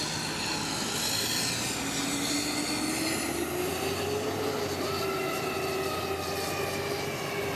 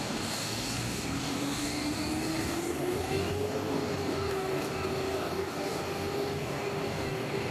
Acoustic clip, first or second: first